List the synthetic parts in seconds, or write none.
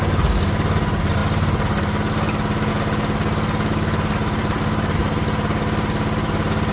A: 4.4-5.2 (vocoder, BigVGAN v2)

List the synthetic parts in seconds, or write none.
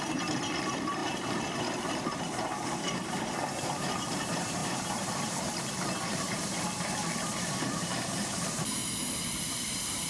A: 0.0-8.8 (vocoder, BigVGAN v2); 9.3-10.1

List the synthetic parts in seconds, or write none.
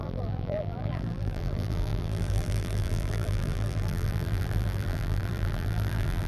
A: 0.0-6.3 (vocoder, BigVGAN v2)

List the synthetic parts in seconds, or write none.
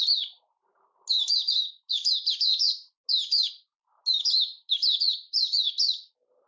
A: none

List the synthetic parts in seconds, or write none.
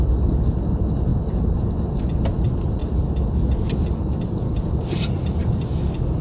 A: 2.8-5.8 (vocoder, BigVGAN v2)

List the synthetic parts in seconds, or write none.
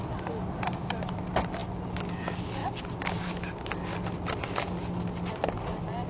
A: 0.4-0.9 (vocoder, BigVGAN v2)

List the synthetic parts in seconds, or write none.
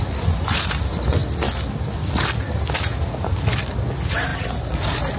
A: none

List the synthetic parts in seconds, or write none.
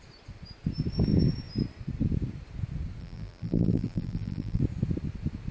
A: 3.0-4.6 (vocoder, BigVGAN v2)